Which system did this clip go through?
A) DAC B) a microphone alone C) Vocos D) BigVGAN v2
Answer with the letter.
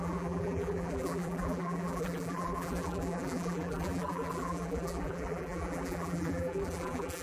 D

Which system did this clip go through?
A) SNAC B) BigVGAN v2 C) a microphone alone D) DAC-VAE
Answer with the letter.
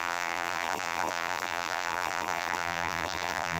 B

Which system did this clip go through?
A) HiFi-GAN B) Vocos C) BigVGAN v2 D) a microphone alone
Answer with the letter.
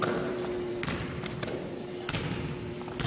C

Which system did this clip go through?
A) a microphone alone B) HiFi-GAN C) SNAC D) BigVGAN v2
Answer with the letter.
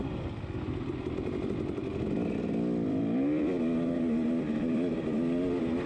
D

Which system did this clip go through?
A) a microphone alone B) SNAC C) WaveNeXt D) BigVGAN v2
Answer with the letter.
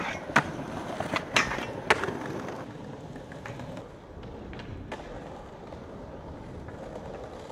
A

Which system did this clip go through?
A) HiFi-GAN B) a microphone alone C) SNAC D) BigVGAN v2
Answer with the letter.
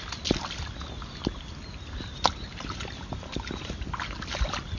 B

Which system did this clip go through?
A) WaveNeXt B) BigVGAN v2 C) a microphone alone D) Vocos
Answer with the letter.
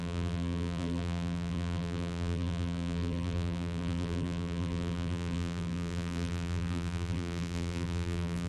B